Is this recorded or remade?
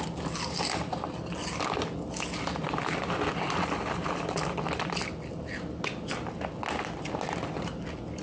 recorded